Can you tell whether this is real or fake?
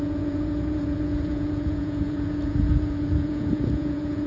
fake